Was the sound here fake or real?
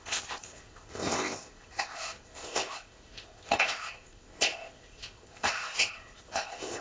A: fake